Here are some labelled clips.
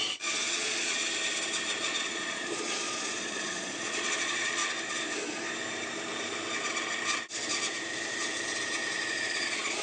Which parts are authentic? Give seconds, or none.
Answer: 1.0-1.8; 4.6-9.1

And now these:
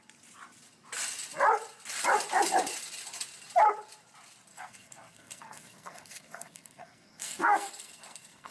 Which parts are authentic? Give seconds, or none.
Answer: 0.0-4.5